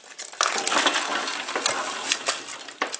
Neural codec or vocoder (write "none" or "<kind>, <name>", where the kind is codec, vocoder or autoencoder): none